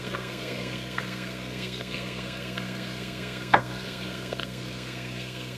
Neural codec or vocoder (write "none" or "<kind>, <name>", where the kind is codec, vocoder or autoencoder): codec, SNAC